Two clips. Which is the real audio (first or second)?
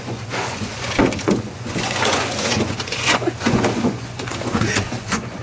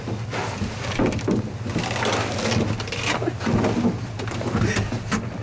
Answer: second